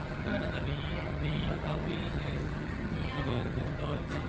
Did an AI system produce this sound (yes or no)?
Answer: yes